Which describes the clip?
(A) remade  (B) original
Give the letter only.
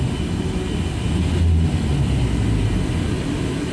B